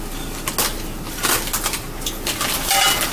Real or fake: real